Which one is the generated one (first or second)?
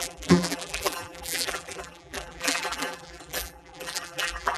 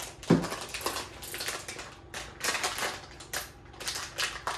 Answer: first